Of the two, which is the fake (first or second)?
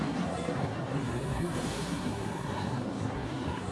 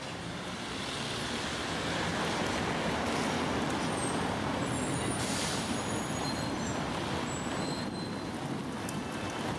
first